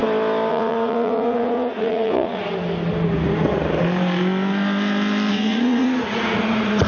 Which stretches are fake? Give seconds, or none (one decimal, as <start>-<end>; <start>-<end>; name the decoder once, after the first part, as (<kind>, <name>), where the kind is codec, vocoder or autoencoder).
0.5-2.4 (vocoder, Vocos); 5.3-6.9